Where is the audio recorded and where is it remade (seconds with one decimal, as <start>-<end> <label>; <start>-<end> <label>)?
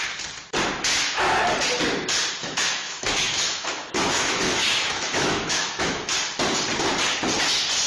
0.0-2.4 recorded; 2.4-6.1 remade; 6.1-7.9 recorded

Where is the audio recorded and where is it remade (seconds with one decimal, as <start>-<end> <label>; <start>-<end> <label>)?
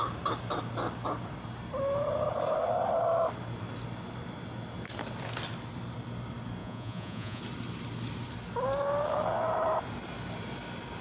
0.0-6.6 recorded; 6.6-7.4 remade; 7.4-11.0 recorded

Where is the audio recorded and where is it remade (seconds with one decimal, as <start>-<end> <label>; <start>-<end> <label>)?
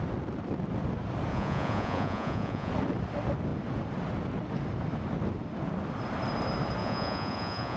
0.0-1.3 recorded; 1.3-2.7 remade; 2.7-6.8 recorded; 6.8-7.8 remade